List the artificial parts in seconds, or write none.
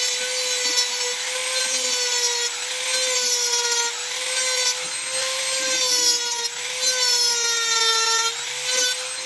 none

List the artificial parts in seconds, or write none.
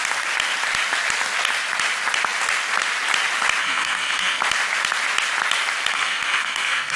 3.6-4.4 (codec, SNAC); 5.9-7.0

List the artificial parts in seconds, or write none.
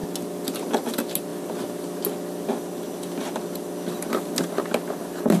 none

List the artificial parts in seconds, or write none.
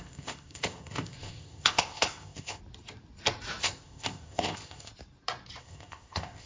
0.0-2.6 (codec, ZipCodec); 3.6-4.9; 5.6-6.5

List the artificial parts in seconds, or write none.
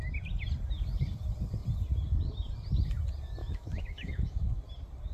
3.4-4.6 (autoencoder, DAC-VAE)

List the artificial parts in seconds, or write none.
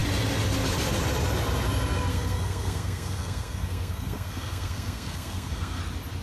2.1-5.8 (codec, SNAC)